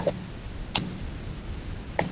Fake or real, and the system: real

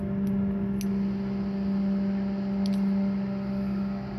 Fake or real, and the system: real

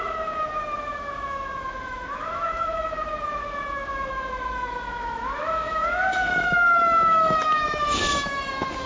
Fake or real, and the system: fake, autoencoder, DAC-VAE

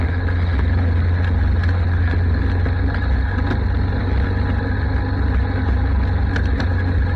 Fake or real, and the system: real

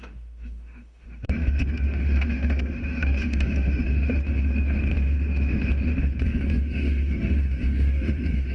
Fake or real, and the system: fake, autoencoder, DAC-VAE